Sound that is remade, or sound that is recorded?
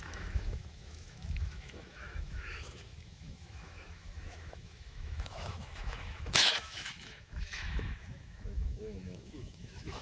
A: remade